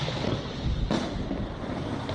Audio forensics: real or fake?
real